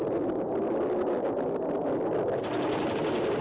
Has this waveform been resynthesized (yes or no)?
no